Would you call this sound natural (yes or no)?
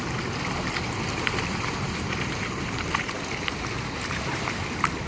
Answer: yes